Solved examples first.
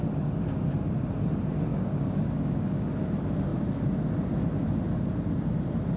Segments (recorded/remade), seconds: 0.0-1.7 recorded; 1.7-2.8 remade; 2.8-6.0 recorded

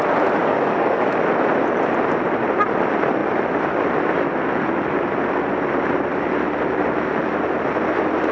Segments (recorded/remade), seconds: 0.0-0.4 recorded; 0.4-1.1 remade; 1.1-8.3 recorded

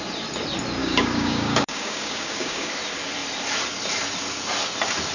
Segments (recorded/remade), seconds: 0.0-0.8 recorded; 0.8-2.7 remade; 2.7-5.1 recorded

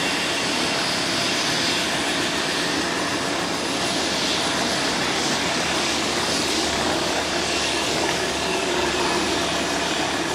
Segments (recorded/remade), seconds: 0.0-5.2 recorded; 5.2-8.9 remade; 8.9-10.3 recorded

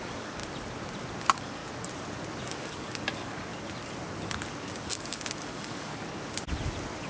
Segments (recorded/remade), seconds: 0.0-0.4 remade; 0.4-1.2 recorded; 1.2-1.6 remade; 1.6-2.5 recorded; 2.5-3.5 remade; 3.5-4.6 recorded; 4.6-5.9 remade; 5.9-7.1 recorded

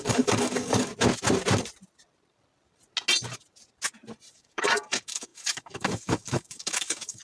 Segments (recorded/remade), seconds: 0.0-0.9 remade; 0.9-4.3 recorded; 4.3-7.2 remade

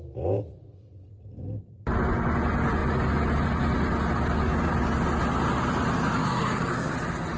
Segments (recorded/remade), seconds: 0.0-6.2 recorded; 6.2-6.9 remade; 6.9-7.4 recorded

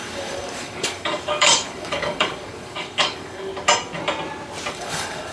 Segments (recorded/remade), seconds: 0.0-3.5 remade; 3.5-4.7 recorded; 4.7-5.3 remade